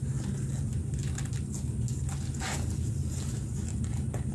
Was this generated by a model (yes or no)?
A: no